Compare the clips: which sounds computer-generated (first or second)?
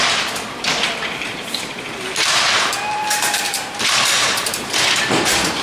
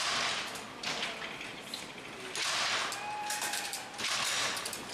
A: first